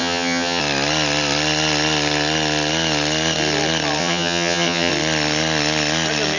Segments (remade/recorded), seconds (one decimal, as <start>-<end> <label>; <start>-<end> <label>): 0.0-0.6 remade; 0.6-4.0 recorded; 4.0-4.9 remade; 4.9-6.4 recorded